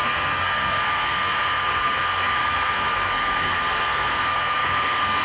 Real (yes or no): no